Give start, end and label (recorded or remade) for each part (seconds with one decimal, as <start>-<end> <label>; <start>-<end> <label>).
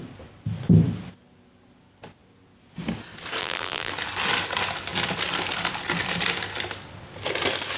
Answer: 0.0-3.4 recorded; 3.4-3.9 remade; 3.9-7.8 recorded